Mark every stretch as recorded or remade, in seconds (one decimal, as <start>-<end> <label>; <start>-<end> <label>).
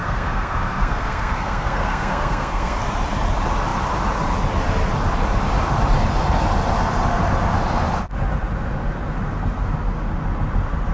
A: 0.0-2.8 remade; 2.8-10.9 recorded